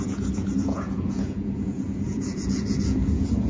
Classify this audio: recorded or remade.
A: remade